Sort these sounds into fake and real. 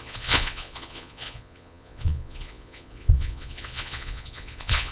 fake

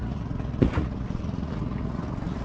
fake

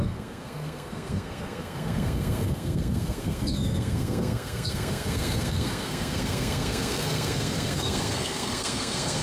fake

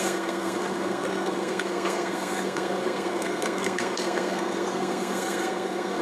fake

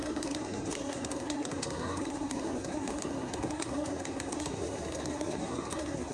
fake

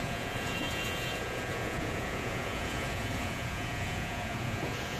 fake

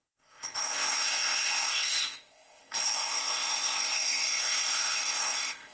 fake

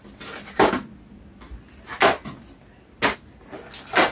real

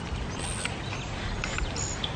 real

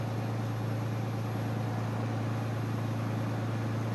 real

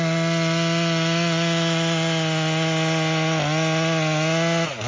real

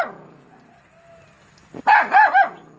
real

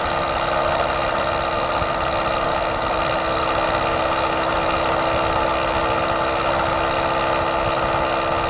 real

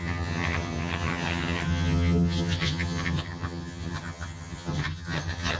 fake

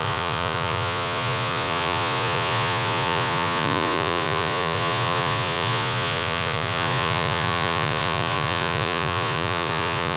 fake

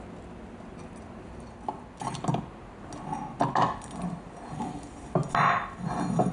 real